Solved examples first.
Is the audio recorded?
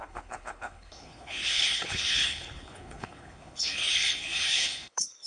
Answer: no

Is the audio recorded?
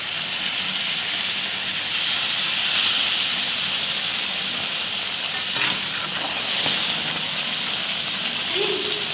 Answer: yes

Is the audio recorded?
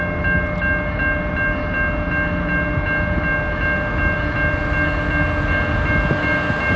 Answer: yes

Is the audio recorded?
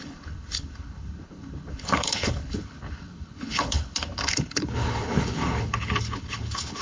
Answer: no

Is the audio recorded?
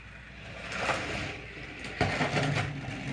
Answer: yes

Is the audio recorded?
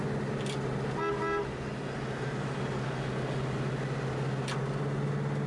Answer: yes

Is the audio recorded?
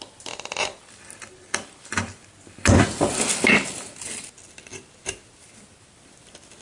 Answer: yes